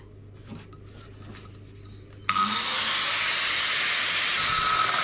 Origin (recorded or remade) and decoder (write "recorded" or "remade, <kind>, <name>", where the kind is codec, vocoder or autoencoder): recorded